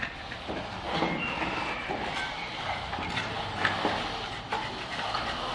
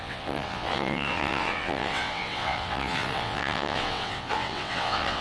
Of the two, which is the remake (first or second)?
second